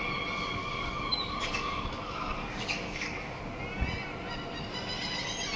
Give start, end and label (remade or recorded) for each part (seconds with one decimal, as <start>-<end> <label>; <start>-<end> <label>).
0.0-0.6 recorded; 0.6-3.4 remade; 3.4-5.6 recorded